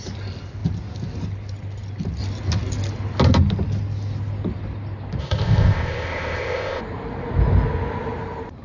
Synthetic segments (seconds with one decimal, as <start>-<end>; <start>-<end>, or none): 5.2-6.8